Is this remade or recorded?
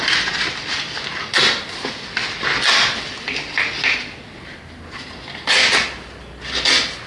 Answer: recorded